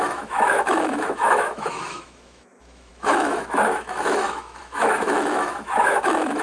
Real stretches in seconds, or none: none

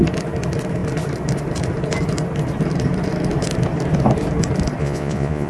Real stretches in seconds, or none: 0.0-4.8